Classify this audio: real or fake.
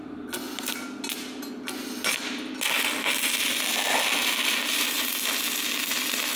real